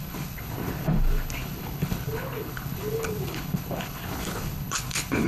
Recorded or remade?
remade